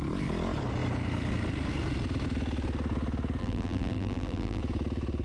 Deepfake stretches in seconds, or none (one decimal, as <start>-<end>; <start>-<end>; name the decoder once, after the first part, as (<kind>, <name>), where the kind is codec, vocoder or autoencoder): 3.4-4.6 (vocoder, BigVGAN v2)